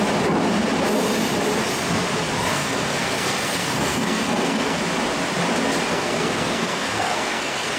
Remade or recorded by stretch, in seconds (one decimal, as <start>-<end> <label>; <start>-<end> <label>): 0.0-2.5 recorded; 2.5-4.8 remade; 4.8-5.9 recorded; 5.9-7.8 remade